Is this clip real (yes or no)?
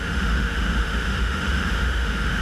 no